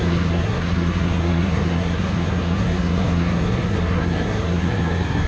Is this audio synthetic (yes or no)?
yes